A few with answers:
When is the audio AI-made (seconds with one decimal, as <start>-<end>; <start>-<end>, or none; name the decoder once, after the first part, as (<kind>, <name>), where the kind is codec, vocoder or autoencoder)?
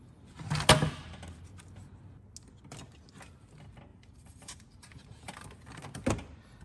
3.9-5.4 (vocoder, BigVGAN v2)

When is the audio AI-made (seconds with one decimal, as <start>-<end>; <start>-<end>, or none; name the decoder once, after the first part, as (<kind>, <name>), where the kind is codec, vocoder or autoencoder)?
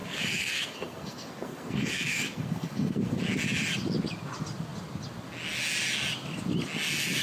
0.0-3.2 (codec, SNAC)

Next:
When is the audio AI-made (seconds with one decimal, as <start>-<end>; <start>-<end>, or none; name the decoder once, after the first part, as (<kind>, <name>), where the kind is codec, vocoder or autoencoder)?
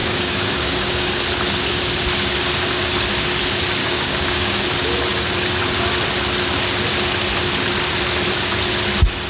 0.0-1.1 (codec, DAC); 3.8-4.6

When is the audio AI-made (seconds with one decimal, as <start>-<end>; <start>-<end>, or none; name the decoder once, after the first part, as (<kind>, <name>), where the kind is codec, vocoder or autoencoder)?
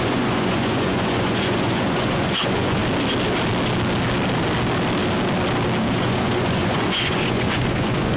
0.0-2.8 (vocoder, Vocos); 5.9-8.2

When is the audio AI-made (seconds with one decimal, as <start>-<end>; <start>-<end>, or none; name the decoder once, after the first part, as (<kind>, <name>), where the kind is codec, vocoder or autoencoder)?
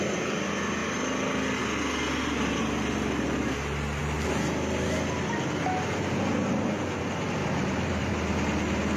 7.4-8.1 (vocoder, BigVGAN v2)